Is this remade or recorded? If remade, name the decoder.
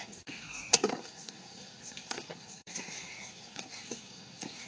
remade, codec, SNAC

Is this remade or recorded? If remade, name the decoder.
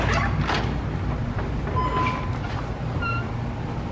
recorded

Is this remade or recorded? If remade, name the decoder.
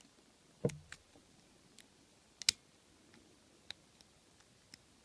recorded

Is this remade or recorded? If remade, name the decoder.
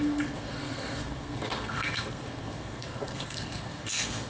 remade, codec, SNAC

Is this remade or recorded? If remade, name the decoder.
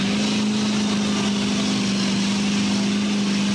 recorded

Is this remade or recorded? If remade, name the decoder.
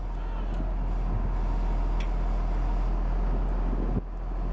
recorded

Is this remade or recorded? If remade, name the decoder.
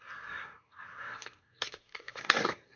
remade, codec, SNAC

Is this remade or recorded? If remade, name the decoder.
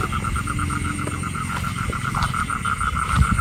recorded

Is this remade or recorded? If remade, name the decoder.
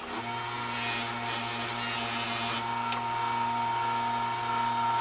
recorded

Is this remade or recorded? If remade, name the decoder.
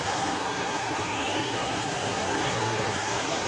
remade, codec, SNAC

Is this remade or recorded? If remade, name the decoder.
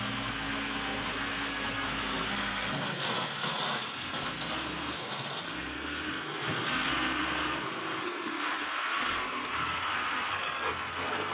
remade, codec, SNAC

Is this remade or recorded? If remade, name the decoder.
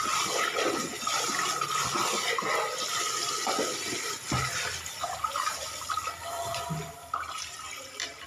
recorded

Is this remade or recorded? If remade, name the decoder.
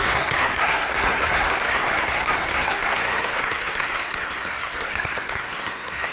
remade, codec, SNAC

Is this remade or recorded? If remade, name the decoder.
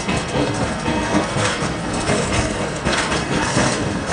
remade, codec, SNAC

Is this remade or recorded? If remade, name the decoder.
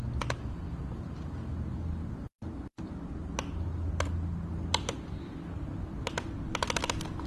recorded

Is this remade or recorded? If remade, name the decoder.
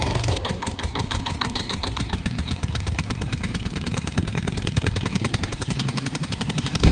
remade, codec, SNAC